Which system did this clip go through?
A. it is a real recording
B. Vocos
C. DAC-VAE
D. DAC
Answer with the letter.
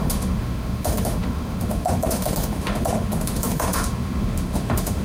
C